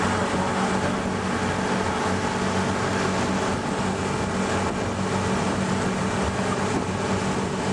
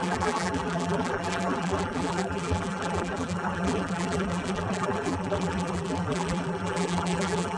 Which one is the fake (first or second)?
second